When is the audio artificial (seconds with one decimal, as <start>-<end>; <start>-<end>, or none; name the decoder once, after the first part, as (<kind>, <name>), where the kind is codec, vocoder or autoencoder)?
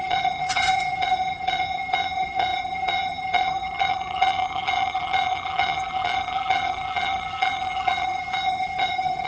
0.0-9.3 (vocoder, HiFi-GAN)